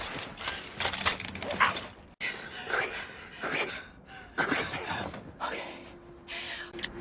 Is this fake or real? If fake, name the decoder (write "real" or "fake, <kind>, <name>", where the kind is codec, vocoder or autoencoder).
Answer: real